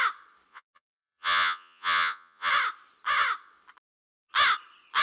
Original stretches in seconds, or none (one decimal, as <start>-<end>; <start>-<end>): 0.0-0.5; 2.5-5.0